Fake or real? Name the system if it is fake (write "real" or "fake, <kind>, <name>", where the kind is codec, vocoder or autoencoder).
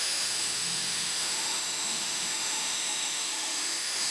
fake, autoencoder, DAC-VAE